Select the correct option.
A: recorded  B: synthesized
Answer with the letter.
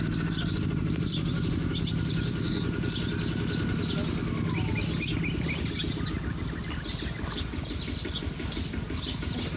A